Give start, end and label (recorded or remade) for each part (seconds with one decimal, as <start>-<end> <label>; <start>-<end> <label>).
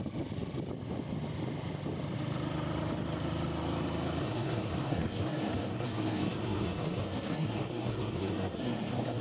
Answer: 0.0-4.2 recorded; 4.2-9.2 remade